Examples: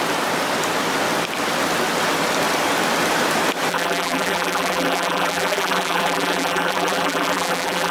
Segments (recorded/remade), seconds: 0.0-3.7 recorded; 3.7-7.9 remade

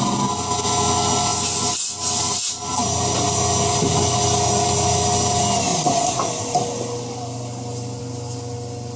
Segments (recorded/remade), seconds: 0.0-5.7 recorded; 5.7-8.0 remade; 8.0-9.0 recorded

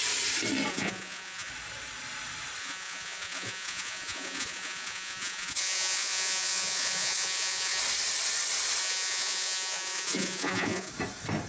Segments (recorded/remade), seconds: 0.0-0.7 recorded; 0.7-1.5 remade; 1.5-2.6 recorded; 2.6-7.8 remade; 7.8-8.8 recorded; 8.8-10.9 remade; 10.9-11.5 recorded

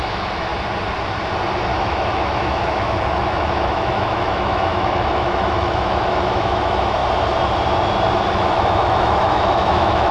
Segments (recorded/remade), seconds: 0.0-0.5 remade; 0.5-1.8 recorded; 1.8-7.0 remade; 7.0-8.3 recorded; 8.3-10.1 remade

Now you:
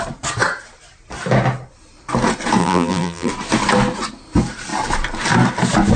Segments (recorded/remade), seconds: 0.0-2.6 recorded; 2.6-3.3 remade; 3.3-6.0 recorded